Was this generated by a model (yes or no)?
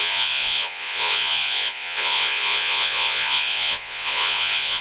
yes